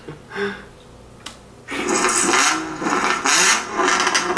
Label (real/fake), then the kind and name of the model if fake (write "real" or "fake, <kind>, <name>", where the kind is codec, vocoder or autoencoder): real